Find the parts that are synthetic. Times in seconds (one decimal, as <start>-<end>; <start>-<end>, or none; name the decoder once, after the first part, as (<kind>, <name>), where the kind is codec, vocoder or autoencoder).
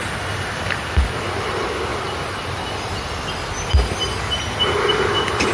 none